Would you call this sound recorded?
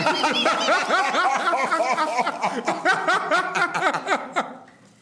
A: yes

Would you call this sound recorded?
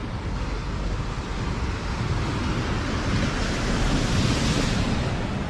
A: yes